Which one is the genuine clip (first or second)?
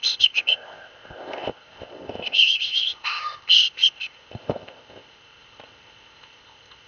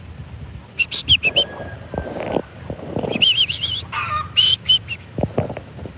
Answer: second